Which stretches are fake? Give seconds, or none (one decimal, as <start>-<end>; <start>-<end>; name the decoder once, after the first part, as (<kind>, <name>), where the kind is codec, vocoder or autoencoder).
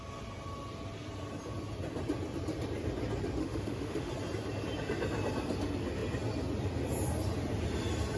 3.4-4.1 (autoencoder, DAC-VAE)